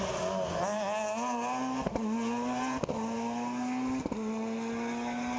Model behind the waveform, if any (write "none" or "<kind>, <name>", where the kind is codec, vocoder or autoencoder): none